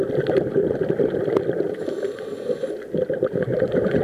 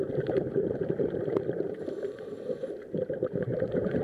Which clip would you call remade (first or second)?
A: second